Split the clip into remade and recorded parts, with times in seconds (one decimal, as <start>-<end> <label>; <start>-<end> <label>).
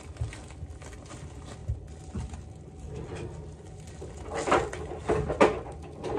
0.0-6.2 recorded